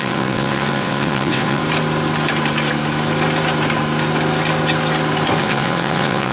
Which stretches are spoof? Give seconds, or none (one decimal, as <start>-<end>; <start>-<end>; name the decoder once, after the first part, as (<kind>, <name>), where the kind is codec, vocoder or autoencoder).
0.0-1.6 (vocoder, WaveNeXt); 5.4-6.3